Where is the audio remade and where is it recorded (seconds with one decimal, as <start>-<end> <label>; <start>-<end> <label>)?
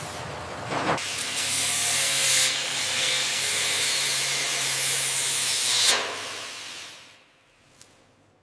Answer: 0.0-1.2 recorded; 1.2-3.5 remade; 3.5-8.4 recorded